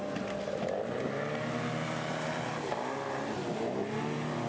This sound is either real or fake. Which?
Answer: real